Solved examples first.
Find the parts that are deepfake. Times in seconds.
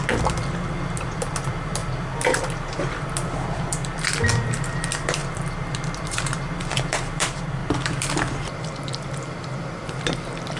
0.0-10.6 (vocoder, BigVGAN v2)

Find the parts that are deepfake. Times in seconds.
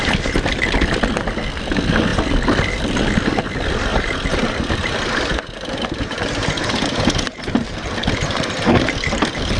3.9-8.6 (vocoder, BigVGAN v2)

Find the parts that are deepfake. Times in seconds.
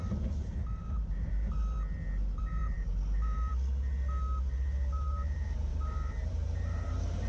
0.0-1.6 (vocoder, BigVGAN v2); 2.4-3.5; 4.5-7.3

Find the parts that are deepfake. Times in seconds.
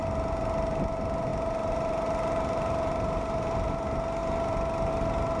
none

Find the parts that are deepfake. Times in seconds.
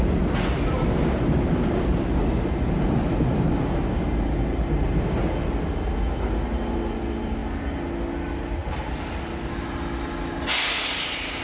none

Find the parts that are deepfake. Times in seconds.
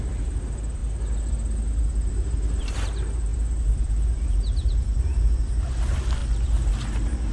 0.0-0.8 (vocoder, BigVGAN v2); 2.1-6.2; 6.7-7.3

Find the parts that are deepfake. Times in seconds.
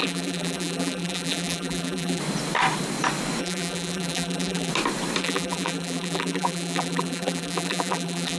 0.0-2.2 (vocoder, BigVGAN v2); 3.4-4.7; 5.2-8.4